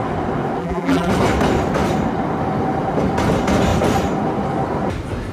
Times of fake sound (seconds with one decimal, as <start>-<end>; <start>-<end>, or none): 0.6-1.1